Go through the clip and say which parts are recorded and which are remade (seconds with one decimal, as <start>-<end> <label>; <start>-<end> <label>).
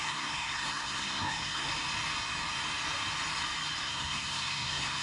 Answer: 0.0-1.7 remade; 1.7-3.8 recorded; 3.8-5.0 remade